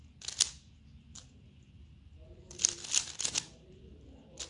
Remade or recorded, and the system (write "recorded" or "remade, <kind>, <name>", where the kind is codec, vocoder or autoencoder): recorded